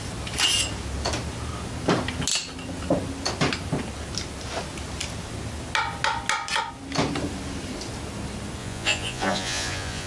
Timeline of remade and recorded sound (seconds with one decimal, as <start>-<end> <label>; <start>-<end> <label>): 0.0-8.6 recorded; 8.6-10.1 remade